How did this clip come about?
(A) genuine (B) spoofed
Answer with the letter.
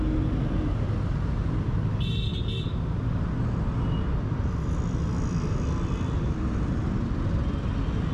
A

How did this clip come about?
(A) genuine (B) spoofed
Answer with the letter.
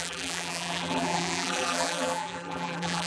B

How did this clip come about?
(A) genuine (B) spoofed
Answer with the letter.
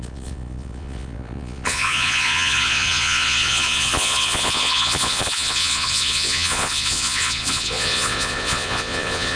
B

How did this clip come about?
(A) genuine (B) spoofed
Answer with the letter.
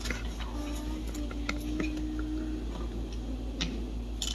A